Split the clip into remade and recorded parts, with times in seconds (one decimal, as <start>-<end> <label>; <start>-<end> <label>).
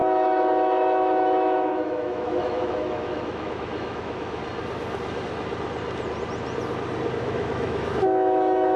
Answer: 0.0-4.4 remade; 4.4-7.2 recorded; 7.2-8.8 remade